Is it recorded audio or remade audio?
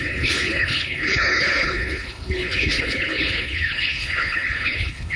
remade